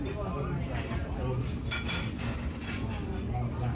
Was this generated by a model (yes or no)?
no